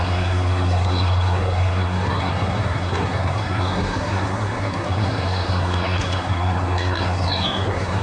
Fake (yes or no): yes